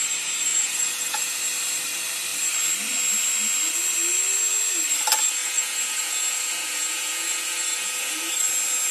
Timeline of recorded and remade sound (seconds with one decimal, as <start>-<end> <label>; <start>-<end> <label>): 0.0-0.5 recorded; 0.5-1.4 remade; 1.4-5.4 recorded; 5.4-8.3 remade; 8.3-8.9 recorded